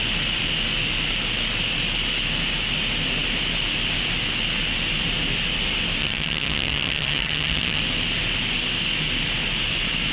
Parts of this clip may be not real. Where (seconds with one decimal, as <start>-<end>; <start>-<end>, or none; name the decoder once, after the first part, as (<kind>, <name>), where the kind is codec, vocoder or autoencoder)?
6.0-7.8 (vocoder, HiFi-GAN)